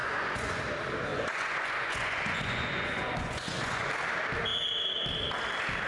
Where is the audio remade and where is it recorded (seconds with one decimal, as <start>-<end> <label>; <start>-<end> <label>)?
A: 0.0-0.6 remade; 0.6-1.1 recorded; 1.1-3.9 remade; 3.9-5.9 recorded